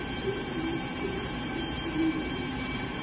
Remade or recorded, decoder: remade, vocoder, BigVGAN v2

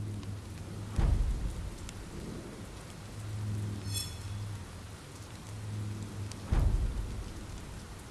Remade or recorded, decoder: recorded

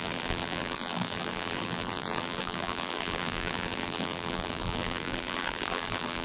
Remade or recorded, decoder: remade, vocoder, BigVGAN v2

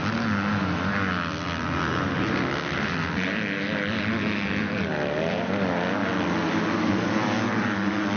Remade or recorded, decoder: recorded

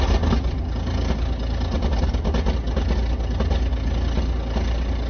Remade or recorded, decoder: recorded